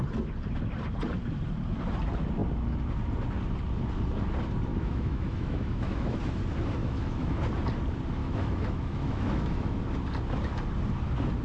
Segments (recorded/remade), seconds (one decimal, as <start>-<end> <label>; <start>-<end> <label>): 0.0-4.7 recorded; 4.7-6.2 remade; 6.2-6.8 recorded; 6.8-7.4 remade; 7.4-8.2 recorded; 8.2-9.8 remade; 9.8-11.4 recorded